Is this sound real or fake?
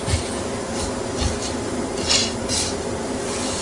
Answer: real